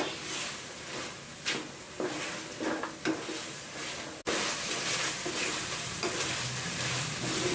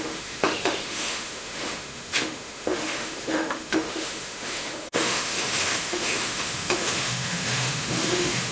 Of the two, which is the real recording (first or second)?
first